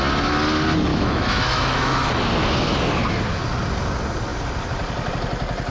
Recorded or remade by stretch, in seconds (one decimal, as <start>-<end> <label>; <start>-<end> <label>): 0.0-0.9 recorded; 0.9-2.1 remade; 2.1-5.7 recorded

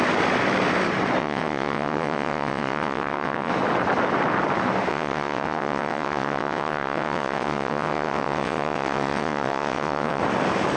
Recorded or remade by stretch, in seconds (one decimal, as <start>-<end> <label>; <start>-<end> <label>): 0.0-1.2 recorded; 1.2-3.5 remade; 3.5-4.9 recorded; 4.9-10.2 remade; 10.2-10.8 recorded